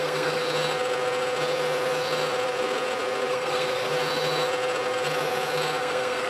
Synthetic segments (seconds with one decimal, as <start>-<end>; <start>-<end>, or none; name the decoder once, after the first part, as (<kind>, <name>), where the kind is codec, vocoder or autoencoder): 0.0-0.4 (codec, SNAC); 3.3-3.9; 5.8-6.3